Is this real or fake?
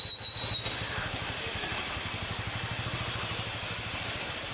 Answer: real